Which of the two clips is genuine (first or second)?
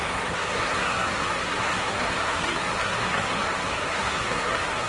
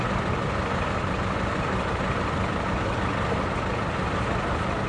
second